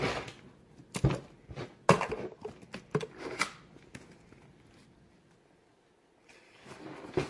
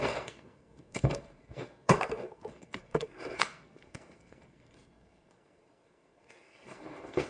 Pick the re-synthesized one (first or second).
second